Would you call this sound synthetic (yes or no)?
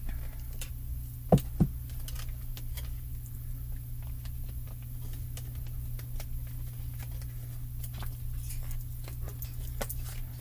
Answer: no